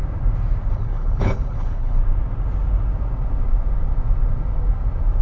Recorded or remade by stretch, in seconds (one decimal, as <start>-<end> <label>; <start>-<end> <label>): 0.0-0.7 recorded; 0.7-2.0 remade; 2.0-5.2 recorded